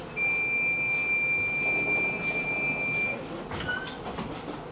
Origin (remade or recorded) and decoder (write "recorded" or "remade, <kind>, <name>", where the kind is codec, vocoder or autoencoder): recorded